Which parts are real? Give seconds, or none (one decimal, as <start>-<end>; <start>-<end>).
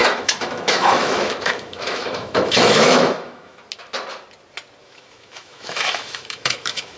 3.6-4.8